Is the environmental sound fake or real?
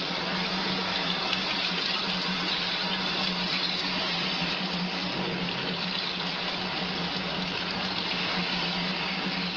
real